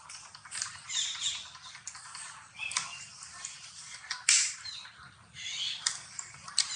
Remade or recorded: remade